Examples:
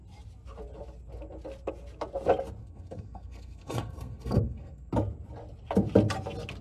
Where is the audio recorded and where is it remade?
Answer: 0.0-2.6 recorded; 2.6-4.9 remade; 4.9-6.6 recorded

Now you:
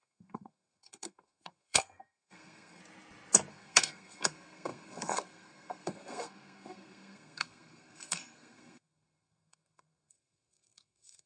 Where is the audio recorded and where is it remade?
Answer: 0.0-2.8 remade; 2.8-3.5 recorded; 3.5-11.3 remade